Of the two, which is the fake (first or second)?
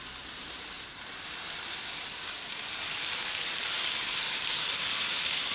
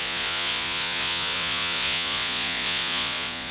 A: second